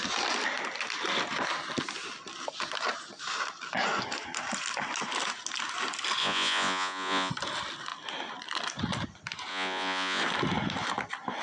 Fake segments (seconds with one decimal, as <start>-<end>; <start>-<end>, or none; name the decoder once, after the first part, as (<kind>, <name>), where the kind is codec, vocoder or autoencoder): 6.2-7.3 (vocoder, Vocos); 9.5-10.2